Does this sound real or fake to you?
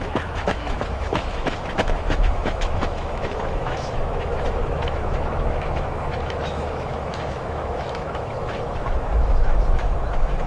fake